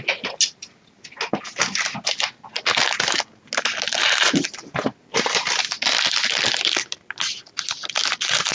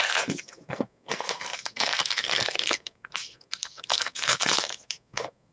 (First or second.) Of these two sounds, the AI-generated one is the second